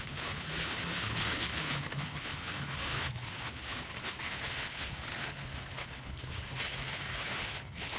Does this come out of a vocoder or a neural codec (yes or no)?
yes